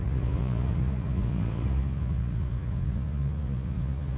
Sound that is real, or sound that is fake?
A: fake